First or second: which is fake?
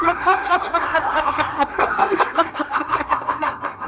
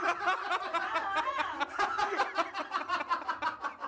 first